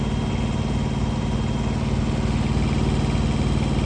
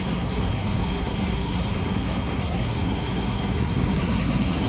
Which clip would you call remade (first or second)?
second